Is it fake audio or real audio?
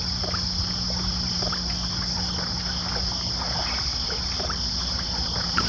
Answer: real